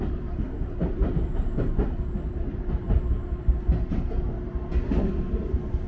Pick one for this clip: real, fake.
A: real